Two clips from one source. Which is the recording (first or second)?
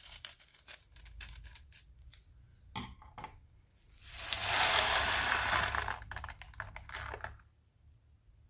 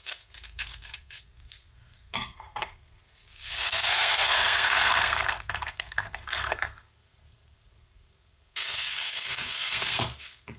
first